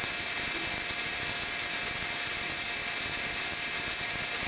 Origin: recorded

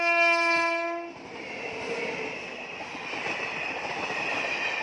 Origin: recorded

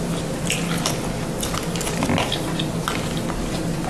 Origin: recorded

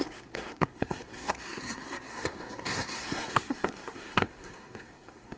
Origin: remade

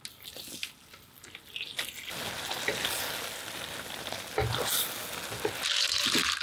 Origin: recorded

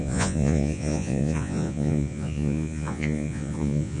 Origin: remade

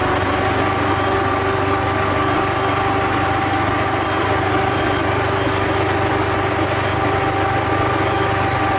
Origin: recorded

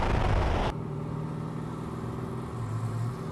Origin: recorded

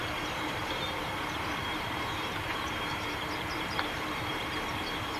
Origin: remade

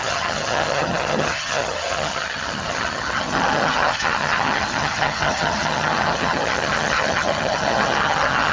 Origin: remade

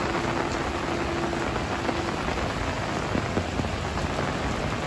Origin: recorded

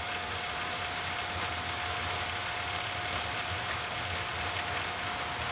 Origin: recorded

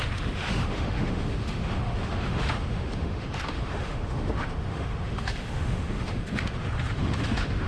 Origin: remade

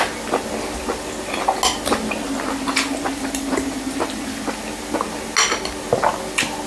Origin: recorded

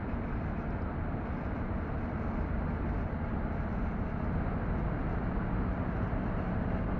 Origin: recorded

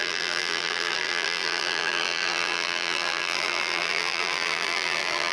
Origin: remade